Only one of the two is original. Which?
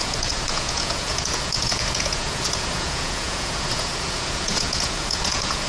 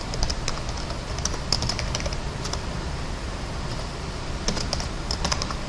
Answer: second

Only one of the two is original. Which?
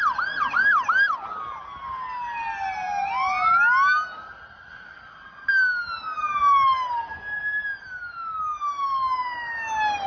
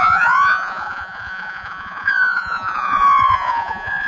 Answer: first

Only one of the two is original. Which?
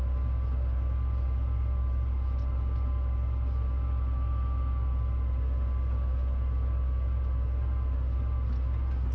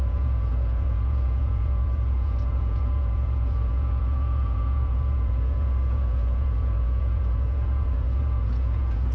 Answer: first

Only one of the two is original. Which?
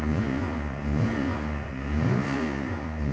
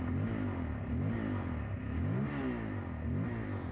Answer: second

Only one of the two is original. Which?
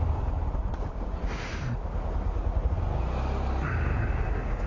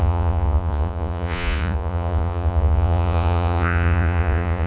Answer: first